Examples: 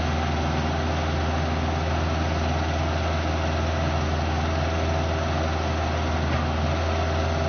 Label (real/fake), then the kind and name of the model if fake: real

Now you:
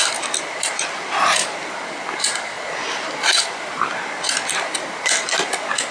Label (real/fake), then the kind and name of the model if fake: real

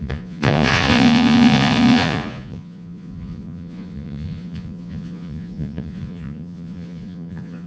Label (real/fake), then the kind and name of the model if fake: fake, vocoder, Vocos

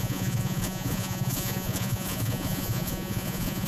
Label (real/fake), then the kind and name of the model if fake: fake, vocoder, Vocos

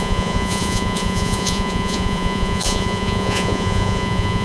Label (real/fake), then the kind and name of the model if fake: fake, vocoder, Vocos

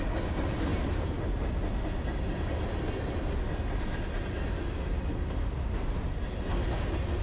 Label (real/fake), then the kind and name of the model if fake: real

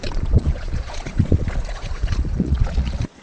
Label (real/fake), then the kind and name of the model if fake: fake, vocoder, Vocos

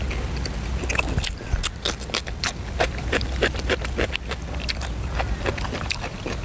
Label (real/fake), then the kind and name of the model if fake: real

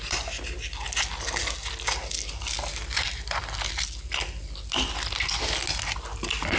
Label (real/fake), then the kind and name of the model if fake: real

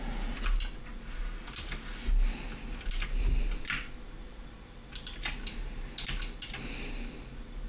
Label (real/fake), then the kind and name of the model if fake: real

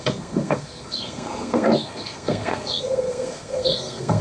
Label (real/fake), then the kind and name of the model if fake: fake, codec, SNAC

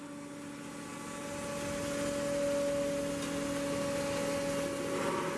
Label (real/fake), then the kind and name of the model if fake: real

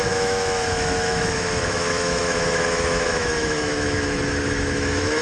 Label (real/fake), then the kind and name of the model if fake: fake, autoencoder, DAC-VAE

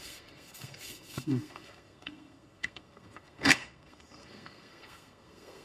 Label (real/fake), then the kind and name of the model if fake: fake, codec, SNAC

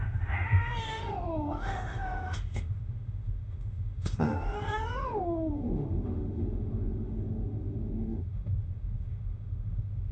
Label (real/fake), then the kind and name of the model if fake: fake, autoencoder, DAC-VAE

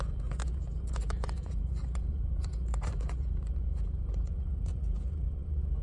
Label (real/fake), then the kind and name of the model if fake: fake, vocoder, Vocos